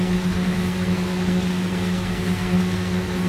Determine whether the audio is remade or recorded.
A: remade